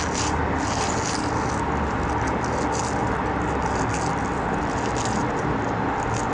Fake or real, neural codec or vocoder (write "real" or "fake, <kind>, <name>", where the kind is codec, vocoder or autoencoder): real